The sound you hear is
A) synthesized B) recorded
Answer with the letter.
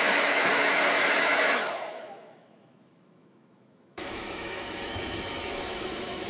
A